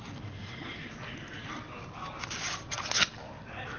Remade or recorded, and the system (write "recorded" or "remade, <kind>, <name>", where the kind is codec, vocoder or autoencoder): recorded